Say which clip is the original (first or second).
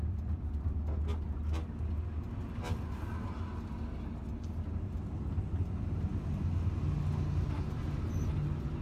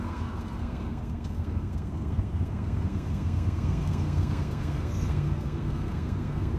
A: first